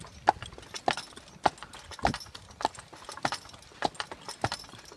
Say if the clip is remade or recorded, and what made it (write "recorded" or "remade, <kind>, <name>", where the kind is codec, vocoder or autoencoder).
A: recorded